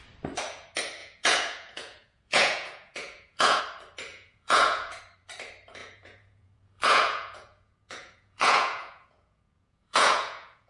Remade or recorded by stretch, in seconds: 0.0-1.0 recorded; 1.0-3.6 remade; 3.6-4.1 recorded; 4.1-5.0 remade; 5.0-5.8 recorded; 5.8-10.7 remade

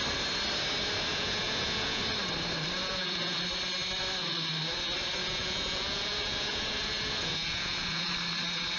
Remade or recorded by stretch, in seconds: 0.0-1.1 recorded; 1.1-2.0 remade; 2.0-2.8 recorded; 2.8-3.4 remade; 3.4-5.2 recorded; 5.2-8.1 remade; 8.1-8.8 recorded